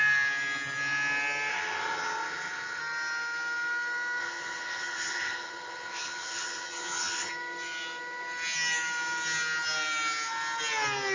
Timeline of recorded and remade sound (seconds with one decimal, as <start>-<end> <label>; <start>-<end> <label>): 0.0-1.5 recorded; 1.5-2.8 remade; 2.8-4.2 recorded; 4.2-7.3 remade; 7.3-11.1 recorded